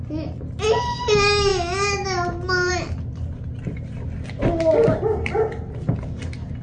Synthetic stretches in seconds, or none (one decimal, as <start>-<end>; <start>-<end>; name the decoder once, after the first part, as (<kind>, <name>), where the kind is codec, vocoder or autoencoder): none